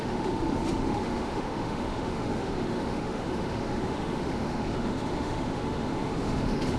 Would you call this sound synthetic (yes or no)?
yes